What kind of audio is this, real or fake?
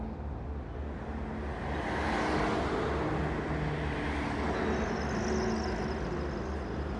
real